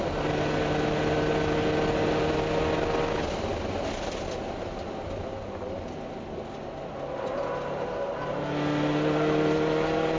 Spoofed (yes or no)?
no